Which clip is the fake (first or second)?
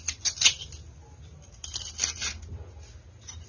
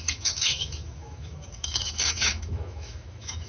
second